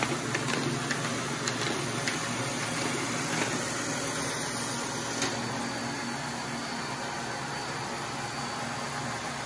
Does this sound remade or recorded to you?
recorded